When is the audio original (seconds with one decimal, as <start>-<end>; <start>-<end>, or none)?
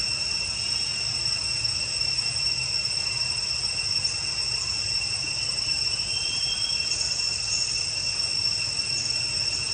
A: 0.0-9.7